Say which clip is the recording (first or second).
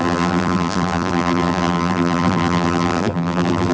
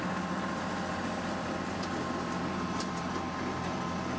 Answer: second